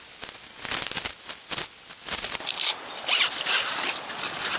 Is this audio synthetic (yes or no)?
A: no